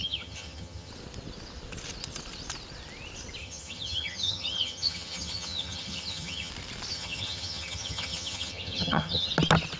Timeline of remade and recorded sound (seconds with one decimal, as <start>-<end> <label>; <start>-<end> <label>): 0.0-0.9 remade; 0.9-3.4 recorded; 3.4-6.5 remade; 6.5-6.9 recorded; 6.9-9.3 remade; 9.3-9.8 recorded